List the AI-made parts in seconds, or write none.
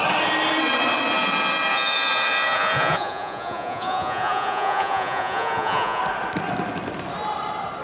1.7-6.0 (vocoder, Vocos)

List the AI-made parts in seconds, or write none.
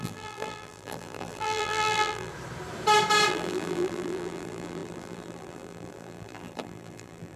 0.0-2.3 (vocoder, BigVGAN v2); 3.3-7.4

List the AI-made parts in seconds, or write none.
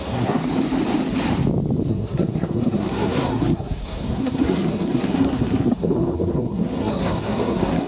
0.0-0.4 (codec, SNAC); 1.9-7.9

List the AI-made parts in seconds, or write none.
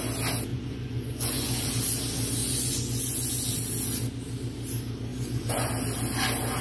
0.5-1.7 (vocoder, Vocos); 2.4-3.5; 5.1-5.7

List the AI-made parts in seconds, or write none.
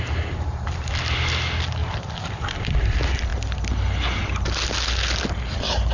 1.8-2.9 (vocoder, BigVGAN v2)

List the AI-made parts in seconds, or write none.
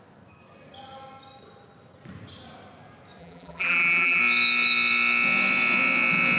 3.2-4.2 (vocoder, BigVGAN v2)